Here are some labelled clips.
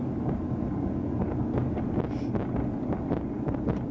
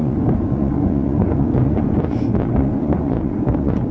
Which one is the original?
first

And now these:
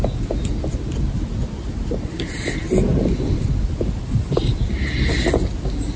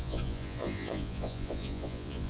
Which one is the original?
first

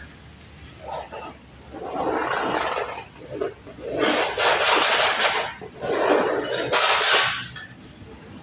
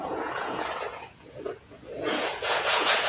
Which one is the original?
first